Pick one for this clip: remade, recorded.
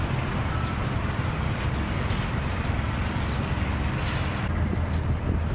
recorded